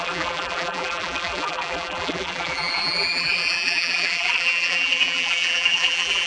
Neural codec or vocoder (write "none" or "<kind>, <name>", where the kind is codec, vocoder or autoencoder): vocoder, BigVGAN v2